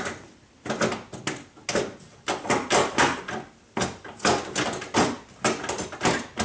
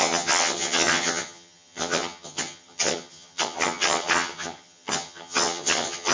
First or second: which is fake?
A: second